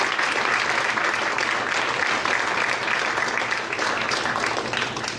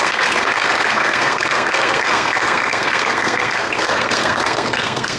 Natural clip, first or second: first